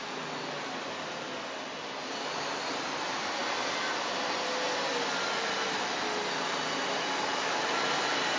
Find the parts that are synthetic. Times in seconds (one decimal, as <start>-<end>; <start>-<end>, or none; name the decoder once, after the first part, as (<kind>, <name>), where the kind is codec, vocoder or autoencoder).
none